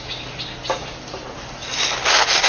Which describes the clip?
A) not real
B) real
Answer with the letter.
B